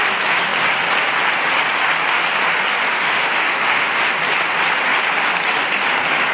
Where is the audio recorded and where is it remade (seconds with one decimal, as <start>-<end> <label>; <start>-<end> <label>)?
0.0-2.9 recorded; 2.9-4.1 remade; 4.1-6.3 recorded